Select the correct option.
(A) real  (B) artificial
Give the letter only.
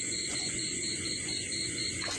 B